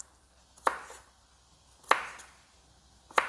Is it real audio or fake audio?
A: real